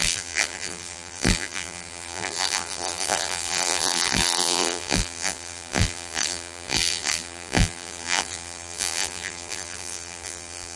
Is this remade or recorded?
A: remade